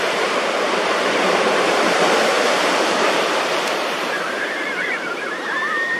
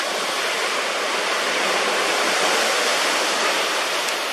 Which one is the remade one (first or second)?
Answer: first